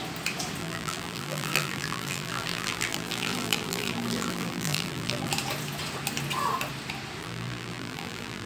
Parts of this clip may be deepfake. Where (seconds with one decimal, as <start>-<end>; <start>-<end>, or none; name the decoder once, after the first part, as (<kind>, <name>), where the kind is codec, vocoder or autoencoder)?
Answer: 0.6-5.3 (vocoder, BigVGAN v2); 7.2-8.5